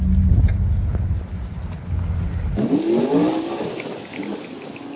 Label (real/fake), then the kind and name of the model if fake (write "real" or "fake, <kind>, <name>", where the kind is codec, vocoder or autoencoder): real